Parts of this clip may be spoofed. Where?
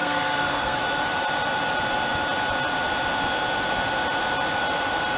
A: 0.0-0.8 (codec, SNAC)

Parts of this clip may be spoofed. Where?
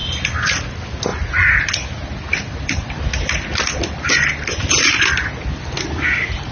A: none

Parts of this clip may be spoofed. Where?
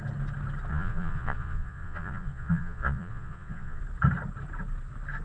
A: 0.7-3.8 (vocoder, Vocos)